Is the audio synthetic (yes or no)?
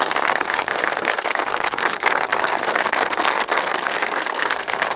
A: yes